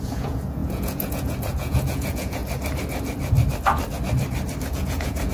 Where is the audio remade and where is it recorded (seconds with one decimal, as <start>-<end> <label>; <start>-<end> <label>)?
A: 0.0-2.4 remade; 2.4-4.7 recorded; 4.7-5.3 remade

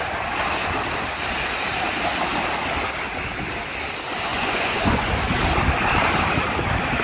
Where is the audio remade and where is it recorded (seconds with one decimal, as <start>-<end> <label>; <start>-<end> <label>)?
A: 0.0-4.3 recorded; 4.3-5.1 remade; 5.1-7.0 recorded

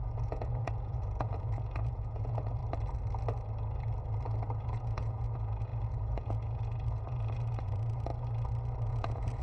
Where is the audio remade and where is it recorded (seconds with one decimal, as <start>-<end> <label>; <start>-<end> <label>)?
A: 0.0-2.6 remade; 2.6-4.6 recorded; 4.6-8.1 remade; 8.1-8.9 recorded; 8.9-9.4 remade